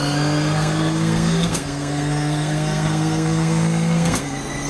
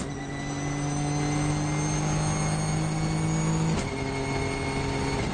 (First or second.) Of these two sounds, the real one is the second